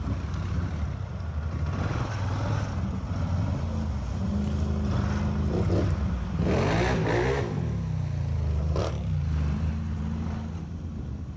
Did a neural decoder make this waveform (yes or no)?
no